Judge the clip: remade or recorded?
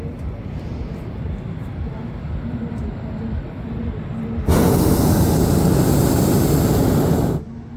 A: recorded